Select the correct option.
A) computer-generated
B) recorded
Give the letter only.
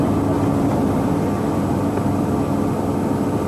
B